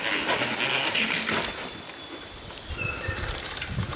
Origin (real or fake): real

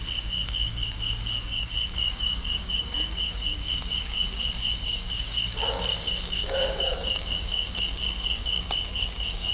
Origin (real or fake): fake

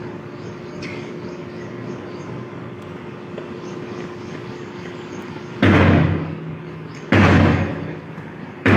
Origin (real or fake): fake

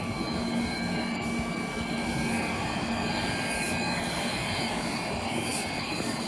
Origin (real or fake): fake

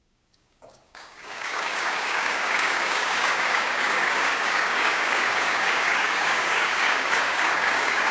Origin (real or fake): fake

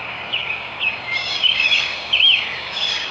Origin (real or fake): fake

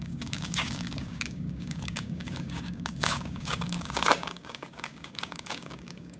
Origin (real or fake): fake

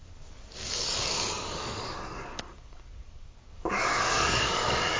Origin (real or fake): fake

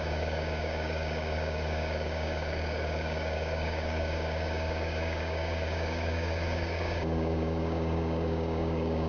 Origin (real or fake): fake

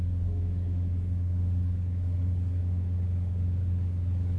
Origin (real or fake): fake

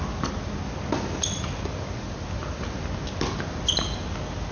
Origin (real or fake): real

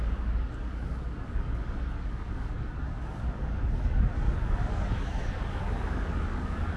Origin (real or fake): fake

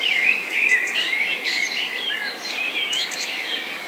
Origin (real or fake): fake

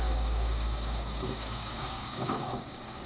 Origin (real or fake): fake